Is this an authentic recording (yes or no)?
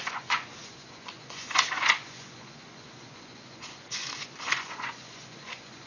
no